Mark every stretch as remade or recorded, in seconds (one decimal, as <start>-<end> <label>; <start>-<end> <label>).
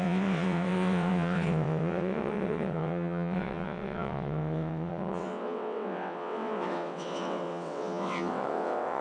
0.0-9.0 remade